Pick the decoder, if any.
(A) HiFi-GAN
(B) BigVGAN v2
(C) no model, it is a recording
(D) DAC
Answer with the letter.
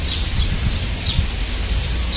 C